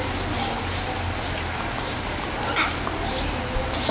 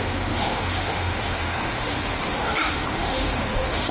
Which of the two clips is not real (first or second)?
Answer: second